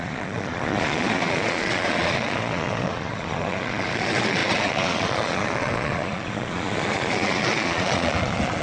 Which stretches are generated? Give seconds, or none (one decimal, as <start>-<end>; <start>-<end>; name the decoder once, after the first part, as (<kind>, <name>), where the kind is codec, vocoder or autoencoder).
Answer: 0.0-8.6 (vocoder, Vocos)